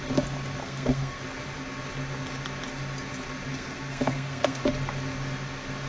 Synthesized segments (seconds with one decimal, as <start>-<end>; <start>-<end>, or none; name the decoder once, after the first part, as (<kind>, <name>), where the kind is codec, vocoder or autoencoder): 0.6-1.2 (codec, SNAC); 3.5-4.6